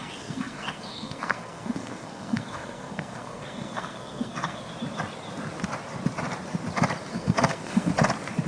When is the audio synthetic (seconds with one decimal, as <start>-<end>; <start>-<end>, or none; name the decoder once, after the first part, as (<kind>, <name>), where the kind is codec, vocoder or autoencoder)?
0.0-4.7 (codec, SNAC); 7.1-7.9

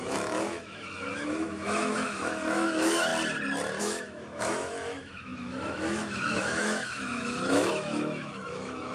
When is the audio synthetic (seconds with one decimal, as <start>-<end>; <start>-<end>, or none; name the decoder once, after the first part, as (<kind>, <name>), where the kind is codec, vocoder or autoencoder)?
0.0-3.1 (autoencoder, DAC-VAE); 3.8-8.9

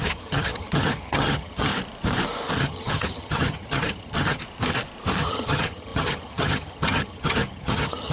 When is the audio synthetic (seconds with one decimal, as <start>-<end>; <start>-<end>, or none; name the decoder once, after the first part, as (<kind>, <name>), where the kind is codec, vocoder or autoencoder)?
0.0-1.7 (vocoder, HiFi-GAN); 2.6-4.4; 5.2-8.1

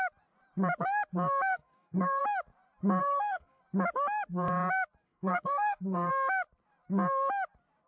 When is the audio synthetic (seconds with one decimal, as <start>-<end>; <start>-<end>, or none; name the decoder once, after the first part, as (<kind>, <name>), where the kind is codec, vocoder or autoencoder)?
1.5-2.2 (codec, SNAC); 3.0-3.6; 5.0-6.1

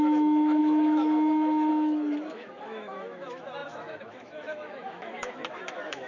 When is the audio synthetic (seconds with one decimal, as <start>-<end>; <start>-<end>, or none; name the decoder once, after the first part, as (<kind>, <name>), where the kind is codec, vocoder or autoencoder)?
0.0-6.1 (autoencoder, DAC-VAE)